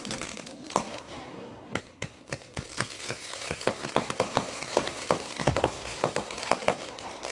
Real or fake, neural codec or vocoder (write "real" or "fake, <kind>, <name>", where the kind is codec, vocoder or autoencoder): fake, codec, SNAC